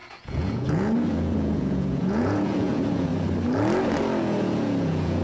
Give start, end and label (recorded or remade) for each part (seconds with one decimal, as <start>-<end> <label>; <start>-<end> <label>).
0.0-3.1 remade; 3.1-4.2 recorded; 4.2-5.2 remade